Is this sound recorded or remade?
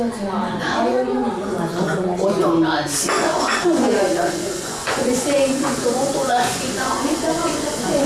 remade